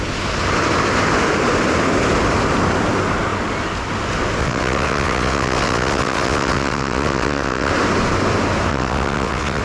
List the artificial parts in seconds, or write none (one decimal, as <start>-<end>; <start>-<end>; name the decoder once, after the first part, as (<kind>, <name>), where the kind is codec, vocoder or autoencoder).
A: 4.4-7.7 (vocoder, WaveNeXt); 8.7-9.6